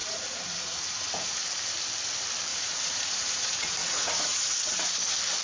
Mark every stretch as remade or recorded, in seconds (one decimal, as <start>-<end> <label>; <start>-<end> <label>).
0.0-1.4 remade; 1.4-2.5 recorded; 2.5-4.9 remade; 4.9-5.4 recorded